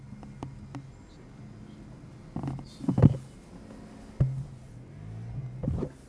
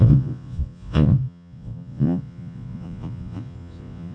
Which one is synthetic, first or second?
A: second